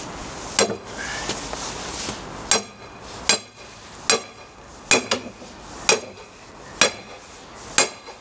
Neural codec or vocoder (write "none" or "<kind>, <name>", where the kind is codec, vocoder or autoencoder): none